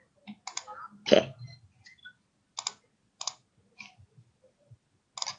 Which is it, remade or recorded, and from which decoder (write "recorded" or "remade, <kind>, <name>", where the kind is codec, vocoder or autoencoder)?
recorded